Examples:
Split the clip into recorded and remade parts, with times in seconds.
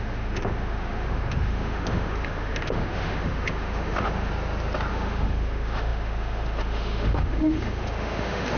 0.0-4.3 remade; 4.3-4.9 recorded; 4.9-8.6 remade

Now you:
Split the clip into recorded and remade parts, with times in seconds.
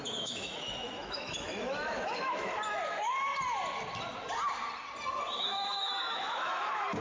0.0-3.3 remade; 3.3-5.4 recorded; 5.4-7.0 remade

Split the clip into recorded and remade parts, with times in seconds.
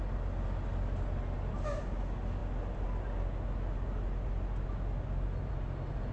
0.0-6.1 recorded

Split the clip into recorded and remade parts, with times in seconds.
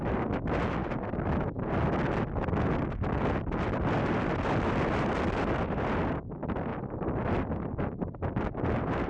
0.0-9.1 recorded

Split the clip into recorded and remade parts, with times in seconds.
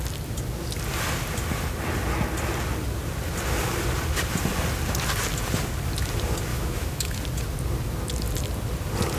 0.0-6.5 recorded; 6.5-7.2 remade; 7.2-9.2 recorded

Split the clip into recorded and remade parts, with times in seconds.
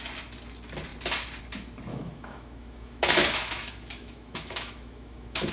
0.0-1.9 recorded; 1.9-5.5 remade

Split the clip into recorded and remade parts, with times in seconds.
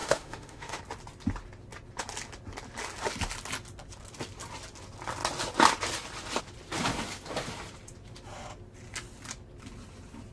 0.0-0.8 remade; 0.8-10.3 recorded